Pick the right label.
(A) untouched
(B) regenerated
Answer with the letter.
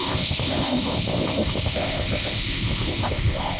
B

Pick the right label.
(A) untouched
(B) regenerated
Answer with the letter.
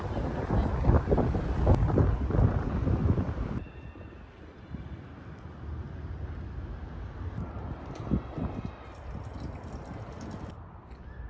A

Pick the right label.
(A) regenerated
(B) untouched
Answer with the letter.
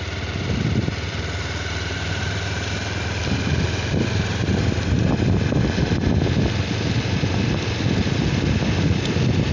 B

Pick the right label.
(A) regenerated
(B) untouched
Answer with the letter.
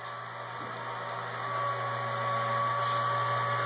B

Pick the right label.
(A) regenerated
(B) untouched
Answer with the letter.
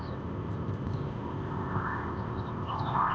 A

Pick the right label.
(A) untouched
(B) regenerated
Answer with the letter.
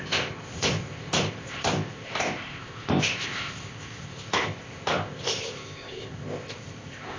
B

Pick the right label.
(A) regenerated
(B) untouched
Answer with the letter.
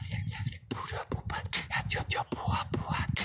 B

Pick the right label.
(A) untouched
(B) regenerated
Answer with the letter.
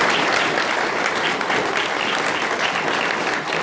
A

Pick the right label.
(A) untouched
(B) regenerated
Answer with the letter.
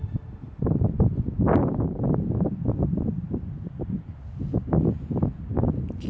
A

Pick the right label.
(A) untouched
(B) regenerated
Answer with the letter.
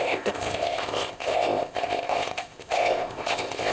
B